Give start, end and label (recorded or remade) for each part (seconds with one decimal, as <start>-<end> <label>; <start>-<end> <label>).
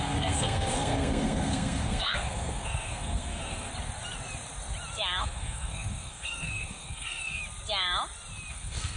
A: 0.0-3.7 remade; 3.7-5.2 recorded; 5.2-7.4 remade; 7.4-8.5 recorded; 8.5-9.0 remade